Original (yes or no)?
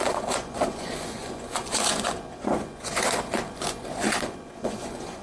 no